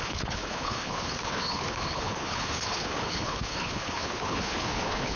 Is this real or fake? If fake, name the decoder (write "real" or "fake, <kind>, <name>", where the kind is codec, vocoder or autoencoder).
fake, codec, HILCodec